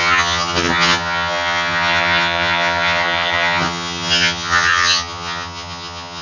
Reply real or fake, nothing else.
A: fake